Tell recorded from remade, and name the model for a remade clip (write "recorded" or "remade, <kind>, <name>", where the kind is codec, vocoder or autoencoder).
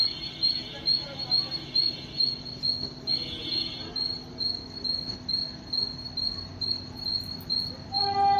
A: recorded